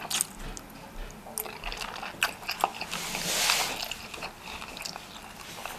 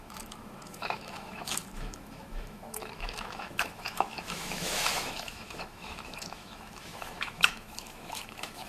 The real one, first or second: first